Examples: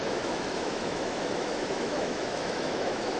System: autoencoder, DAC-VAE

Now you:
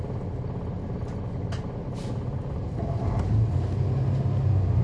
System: none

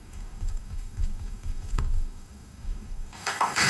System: codec, DAC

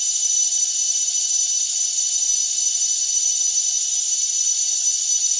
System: vocoder, Vocos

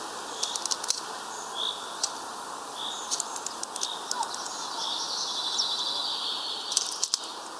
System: none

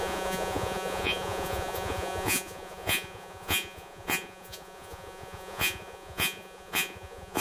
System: vocoder, Vocos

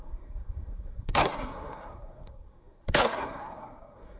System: codec, SNAC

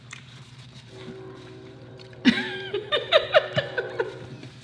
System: vocoder, BigVGAN v2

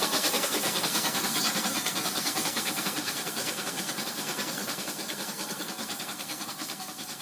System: codec, SNAC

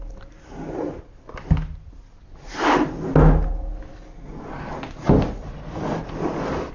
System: none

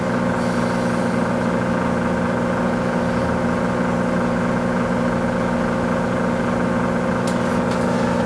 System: none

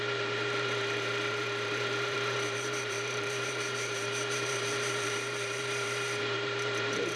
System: vocoder, BigVGAN v2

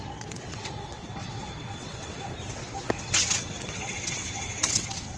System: vocoder, WaveNeXt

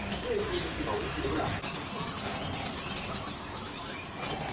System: none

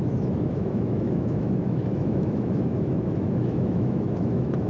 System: autoencoder, DAC-VAE